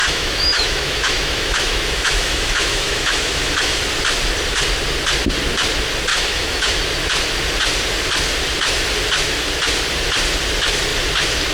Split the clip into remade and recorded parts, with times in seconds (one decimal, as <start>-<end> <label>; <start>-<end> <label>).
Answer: 0.0-3.8 remade; 3.8-6.1 recorded; 6.1-6.8 remade; 6.8-11.5 recorded